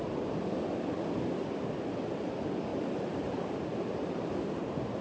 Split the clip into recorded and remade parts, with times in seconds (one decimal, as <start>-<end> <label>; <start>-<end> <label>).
0.0-2.7 recorded; 2.7-4.3 remade; 4.3-5.0 recorded